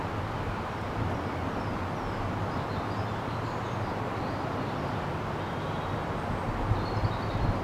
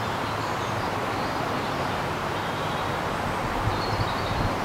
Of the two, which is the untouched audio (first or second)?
first